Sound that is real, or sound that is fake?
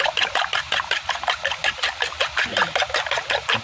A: real